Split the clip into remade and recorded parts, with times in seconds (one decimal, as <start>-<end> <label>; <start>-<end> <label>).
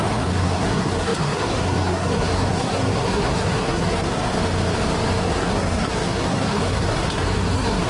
0.0-4.3 remade; 4.3-5.2 recorded; 5.2-7.9 remade